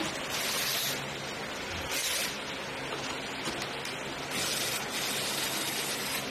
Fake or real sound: real